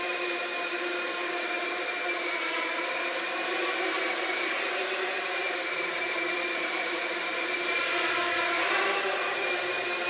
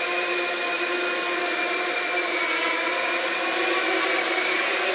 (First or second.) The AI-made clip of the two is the first